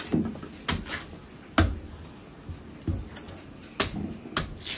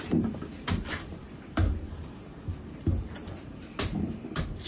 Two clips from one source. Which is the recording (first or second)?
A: first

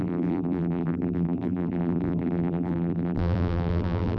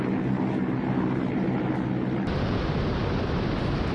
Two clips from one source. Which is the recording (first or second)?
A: second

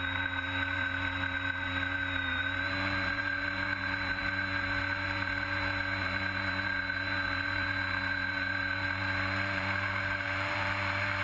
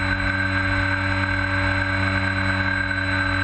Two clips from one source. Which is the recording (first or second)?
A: second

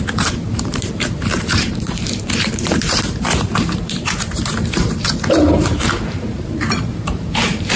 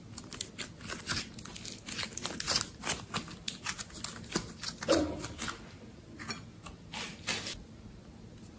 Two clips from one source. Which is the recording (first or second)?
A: second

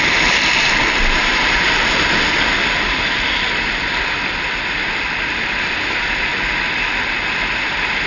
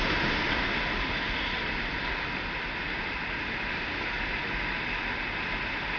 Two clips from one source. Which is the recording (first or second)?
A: second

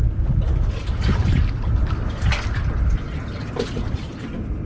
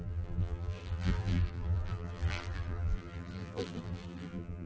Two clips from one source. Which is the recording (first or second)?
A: first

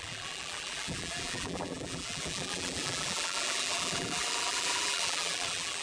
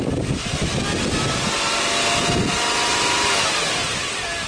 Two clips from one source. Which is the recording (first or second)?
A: second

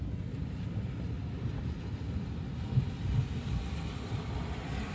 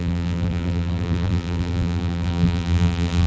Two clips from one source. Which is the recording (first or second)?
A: first